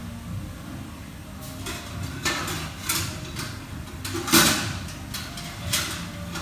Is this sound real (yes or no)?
yes